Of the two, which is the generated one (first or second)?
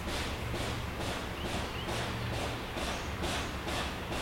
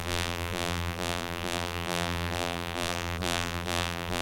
second